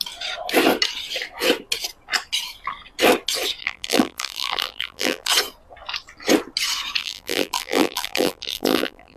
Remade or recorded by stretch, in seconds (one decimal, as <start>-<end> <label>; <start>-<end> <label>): 0.0-3.6 recorded; 3.6-5.3 remade; 5.3-7.0 recorded; 7.0-9.2 remade